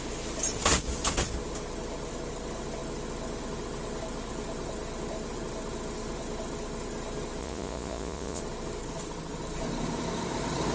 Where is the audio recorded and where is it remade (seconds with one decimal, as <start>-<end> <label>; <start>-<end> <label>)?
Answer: 0.0-7.4 recorded; 7.4-8.4 remade; 8.4-10.7 recorded